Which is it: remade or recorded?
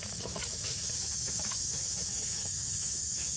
remade